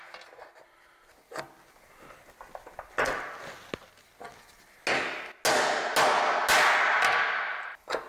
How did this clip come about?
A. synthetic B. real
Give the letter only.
B